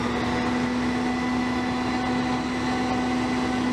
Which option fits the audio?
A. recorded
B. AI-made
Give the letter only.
A